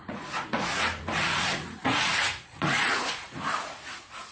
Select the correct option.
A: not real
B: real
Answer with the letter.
A